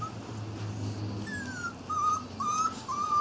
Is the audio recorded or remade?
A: recorded